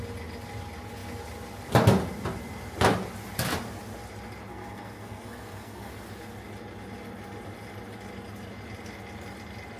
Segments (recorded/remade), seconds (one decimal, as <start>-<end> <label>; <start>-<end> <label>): 0.0-4.5 recorded; 4.5-5.9 remade; 5.9-9.8 recorded